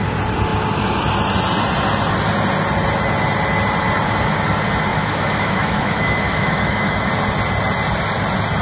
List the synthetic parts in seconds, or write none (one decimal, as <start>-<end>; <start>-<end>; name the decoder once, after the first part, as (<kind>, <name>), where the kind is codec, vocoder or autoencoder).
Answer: 4.9-7.1 (autoencoder, DAC-VAE)